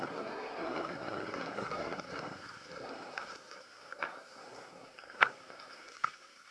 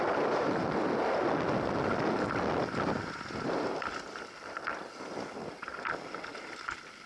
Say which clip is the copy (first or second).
first